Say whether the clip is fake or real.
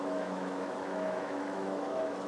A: fake